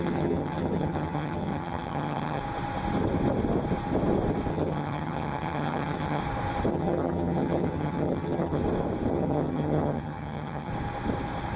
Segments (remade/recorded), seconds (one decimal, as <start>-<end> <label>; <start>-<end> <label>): 0.0-2.4 remade; 2.4-4.5 recorded; 4.5-6.2 remade; 6.2-6.7 recorded; 6.7-8.6 remade; 8.6-9.1 recorded; 9.1-10.7 remade; 10.7-11.6 recorded